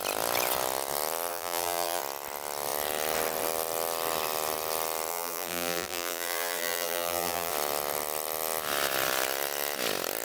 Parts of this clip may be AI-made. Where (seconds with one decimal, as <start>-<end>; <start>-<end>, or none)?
1.3-2.0; 5.1-7.5

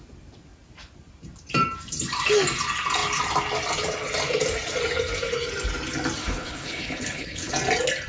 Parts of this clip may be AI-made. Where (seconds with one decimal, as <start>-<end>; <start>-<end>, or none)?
6.2-7.5

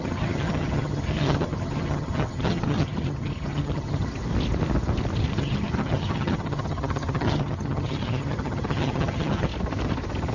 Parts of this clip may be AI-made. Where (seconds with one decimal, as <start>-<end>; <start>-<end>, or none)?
0.0-4.1; 5.3-9.5

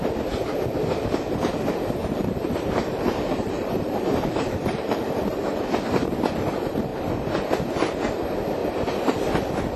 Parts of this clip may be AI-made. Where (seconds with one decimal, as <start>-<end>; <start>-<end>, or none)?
2.0-5.1; 8.6-9.3

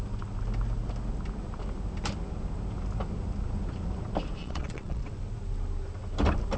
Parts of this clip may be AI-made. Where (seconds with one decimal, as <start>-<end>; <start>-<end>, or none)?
4.4-5.1